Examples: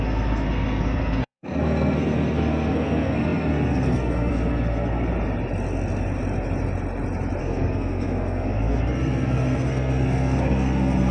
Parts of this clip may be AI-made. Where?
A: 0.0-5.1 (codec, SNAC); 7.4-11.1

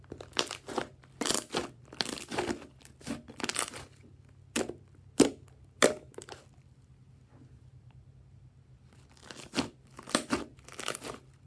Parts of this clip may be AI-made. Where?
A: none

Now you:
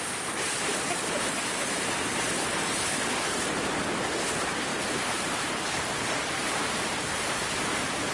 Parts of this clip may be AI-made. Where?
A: 4.7-5.5 (vocoder, BigVGAN v2); 6.4-6.9

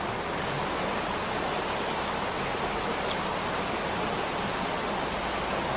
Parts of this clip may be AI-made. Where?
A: none

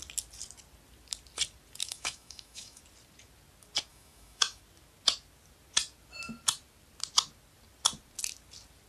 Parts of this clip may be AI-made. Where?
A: 1.8-2.8 (autoencoder, DAC-VAE); 3.9-4.6